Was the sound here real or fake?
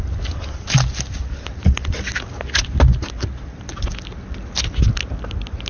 real